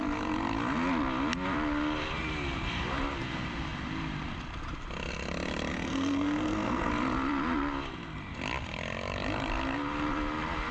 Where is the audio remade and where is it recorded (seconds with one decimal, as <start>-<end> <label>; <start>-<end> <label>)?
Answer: 0.0-5.7 recorded; 5.7-6.9 remade; 6.9-10.7 recorded